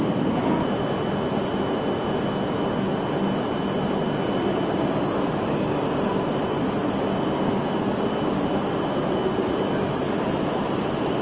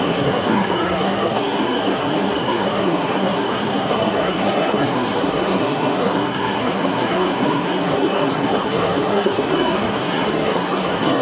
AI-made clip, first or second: second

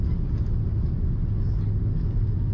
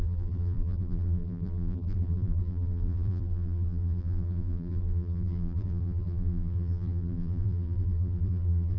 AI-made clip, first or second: second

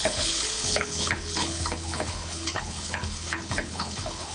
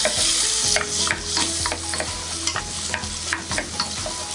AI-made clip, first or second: first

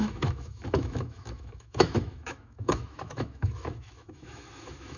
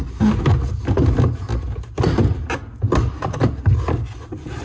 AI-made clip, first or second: first